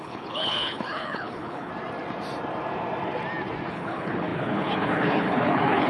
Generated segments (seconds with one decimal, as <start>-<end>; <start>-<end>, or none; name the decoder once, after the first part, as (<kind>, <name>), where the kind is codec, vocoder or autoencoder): 0.0-1.7 (codec, HILCodec); 3.7-5.9